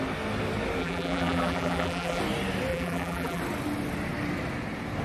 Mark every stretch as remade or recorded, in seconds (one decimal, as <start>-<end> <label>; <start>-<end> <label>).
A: 0.0-0.8 recorded; 0.8-2.2 remade; 2.2-2.7 recorded; 2.7-3.4 remade; 3.4-5.0 recorded